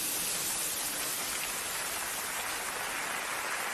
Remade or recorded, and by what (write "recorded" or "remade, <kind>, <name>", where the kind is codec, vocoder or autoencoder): recorded